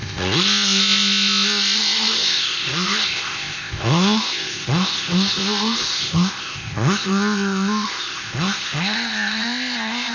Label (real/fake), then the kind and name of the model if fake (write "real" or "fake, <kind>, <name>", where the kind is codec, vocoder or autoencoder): fake, codec, ZipCodec